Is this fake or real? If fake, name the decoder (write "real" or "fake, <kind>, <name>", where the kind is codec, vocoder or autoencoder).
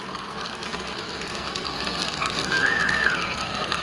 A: fake, codec, SNAC